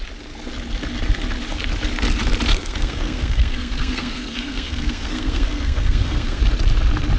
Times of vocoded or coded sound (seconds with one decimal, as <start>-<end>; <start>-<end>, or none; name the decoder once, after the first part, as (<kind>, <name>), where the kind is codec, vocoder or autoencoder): 2.5-6.4 (codec, SNAC)